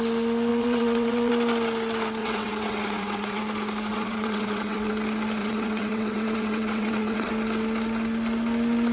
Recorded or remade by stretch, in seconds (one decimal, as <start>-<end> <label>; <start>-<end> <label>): 0.0-0.5 recorded; 0.5-1.3 remade; 1.3-2.2 recorded; 2.2-3.4 remade; 3.4-3.9 recorded; 3.9-4.9 remade; 4.9-5.4 recorded; 5.4-7.3 remade; 7.3-8.9 recorded